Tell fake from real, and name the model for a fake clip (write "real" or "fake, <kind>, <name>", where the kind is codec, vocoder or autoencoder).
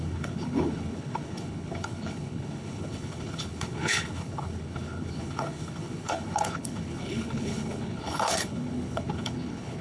fake, codec, HILCodec